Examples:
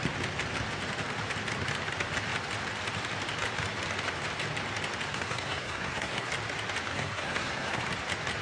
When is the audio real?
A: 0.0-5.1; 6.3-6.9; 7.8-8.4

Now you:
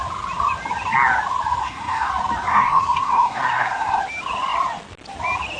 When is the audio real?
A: 0.0-1.6; 2.1-2.5; 4.0-5.6

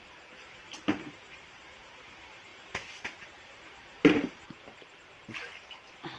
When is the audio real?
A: none